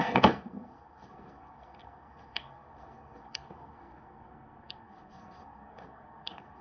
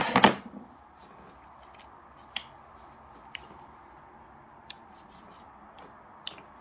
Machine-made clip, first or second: first